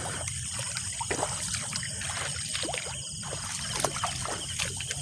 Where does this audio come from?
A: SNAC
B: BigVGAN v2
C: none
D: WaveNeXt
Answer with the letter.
C